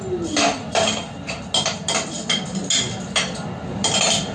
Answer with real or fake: real